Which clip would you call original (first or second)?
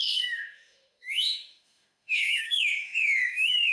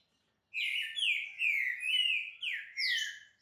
second